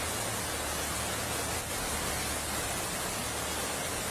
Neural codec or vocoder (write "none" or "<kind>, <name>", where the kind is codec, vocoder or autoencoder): none